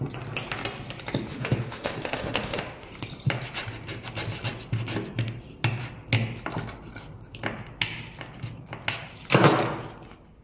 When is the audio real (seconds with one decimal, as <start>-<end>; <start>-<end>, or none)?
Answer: 0.0-1.3; 2.9-10.4